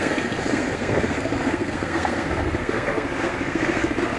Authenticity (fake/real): fake